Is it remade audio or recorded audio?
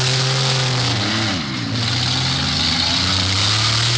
recorded